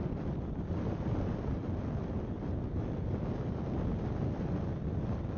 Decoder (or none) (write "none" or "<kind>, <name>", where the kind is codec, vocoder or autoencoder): none